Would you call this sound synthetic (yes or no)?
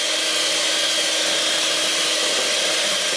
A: no